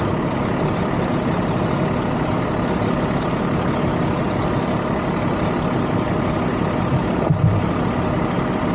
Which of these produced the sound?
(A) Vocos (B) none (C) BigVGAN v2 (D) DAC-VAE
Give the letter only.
B